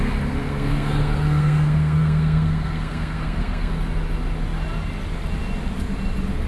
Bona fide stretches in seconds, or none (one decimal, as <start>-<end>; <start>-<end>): 0.0-0.4; 3.7-6.5